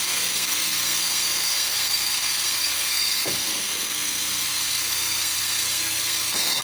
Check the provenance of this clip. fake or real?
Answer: fake